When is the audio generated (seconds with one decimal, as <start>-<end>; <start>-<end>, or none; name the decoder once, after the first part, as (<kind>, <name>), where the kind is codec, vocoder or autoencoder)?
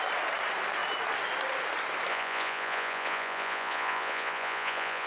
2.1-5.1 (vocoder, Vocos)